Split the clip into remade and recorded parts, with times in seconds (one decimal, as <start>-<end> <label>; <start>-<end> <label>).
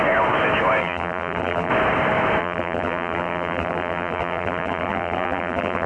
0.0-0.8 recorded; 0.8-1.7 remade; 1.7-2.4 recorded; 2.4-5.9 remade